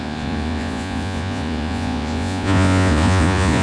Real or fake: fake